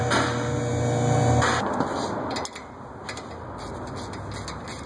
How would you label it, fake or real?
real